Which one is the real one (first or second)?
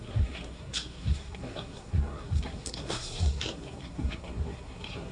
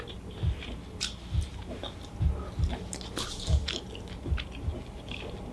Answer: second